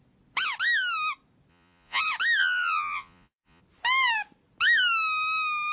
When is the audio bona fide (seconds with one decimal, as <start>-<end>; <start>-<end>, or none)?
0.0-1.5; 2.0-2.4; 3.6-5.7

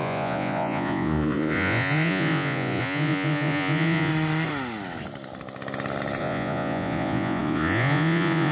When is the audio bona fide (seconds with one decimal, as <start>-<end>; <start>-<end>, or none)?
4.1-6.2